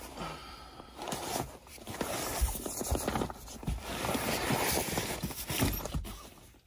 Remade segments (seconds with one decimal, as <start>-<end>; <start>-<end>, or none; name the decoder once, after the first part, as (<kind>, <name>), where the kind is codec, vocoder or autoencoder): 0.4-4.4 (vocoder, BigVGAN v2)

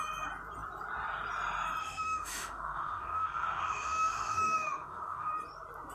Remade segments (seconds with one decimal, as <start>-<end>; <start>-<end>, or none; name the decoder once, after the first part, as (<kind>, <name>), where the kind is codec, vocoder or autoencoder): 1.8-5.3 (autoencoder, DAC-VAE)